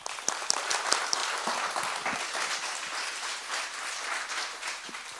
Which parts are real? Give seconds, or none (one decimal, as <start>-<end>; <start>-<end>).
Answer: 0.0-5.2